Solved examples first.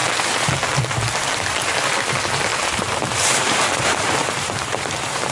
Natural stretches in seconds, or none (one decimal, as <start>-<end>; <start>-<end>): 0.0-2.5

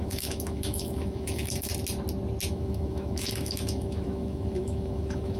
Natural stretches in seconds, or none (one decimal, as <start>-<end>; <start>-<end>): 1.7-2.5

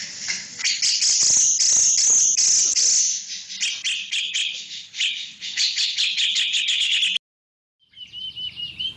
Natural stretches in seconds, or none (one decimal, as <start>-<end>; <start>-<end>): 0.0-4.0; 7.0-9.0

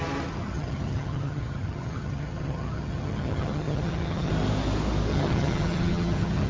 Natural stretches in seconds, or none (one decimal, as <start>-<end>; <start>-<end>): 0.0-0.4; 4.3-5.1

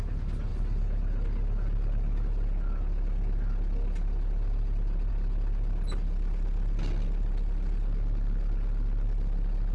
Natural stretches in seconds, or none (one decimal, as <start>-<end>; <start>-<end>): 0.0-9.7

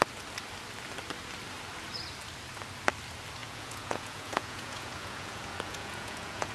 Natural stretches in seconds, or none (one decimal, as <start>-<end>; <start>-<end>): 0.0-3.4

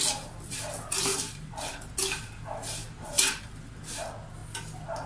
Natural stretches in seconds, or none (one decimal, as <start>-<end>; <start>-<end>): 0.0-1.1; 1.7-2.8; 3.4-5.1